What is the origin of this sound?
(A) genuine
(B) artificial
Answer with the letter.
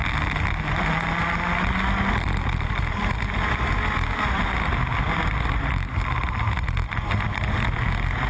A